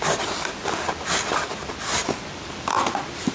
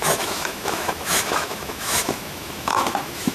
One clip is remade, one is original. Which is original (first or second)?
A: first